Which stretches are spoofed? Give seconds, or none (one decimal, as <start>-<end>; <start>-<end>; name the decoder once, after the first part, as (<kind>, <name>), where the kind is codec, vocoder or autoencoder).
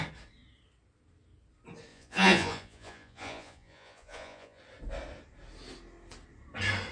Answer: 1.9-4.6 (vocoder, Vocos)